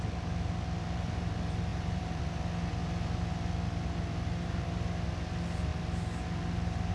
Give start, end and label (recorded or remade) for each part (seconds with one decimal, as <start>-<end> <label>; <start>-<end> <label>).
0.0-1.7 recorded; 1.7-2.2 remade; 2.2-6.9 recorded